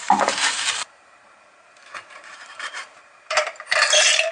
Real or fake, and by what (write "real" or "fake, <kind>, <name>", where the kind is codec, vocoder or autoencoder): fake, vocoder, BigVGAN v2